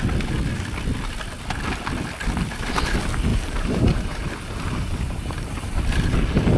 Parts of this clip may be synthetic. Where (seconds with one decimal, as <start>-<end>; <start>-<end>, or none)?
3.3-5.8